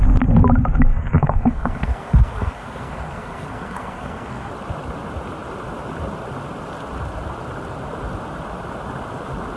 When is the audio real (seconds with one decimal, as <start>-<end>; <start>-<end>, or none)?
0.0-0.9; 4.5-9.6